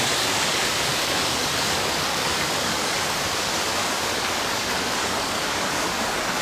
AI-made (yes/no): yes